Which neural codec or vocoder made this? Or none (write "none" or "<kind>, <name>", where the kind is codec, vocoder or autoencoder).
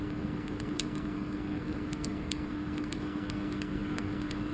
codec, SNAC